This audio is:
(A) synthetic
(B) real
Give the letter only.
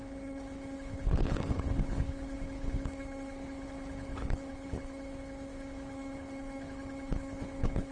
A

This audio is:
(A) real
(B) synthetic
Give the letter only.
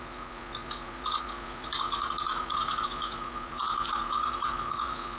B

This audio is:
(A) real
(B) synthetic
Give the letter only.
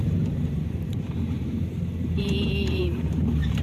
B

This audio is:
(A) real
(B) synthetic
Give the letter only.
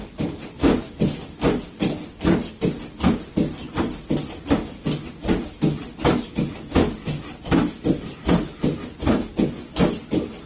A